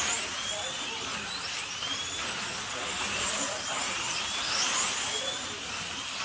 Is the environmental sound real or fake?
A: real